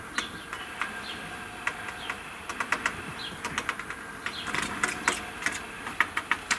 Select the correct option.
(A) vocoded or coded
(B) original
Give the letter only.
B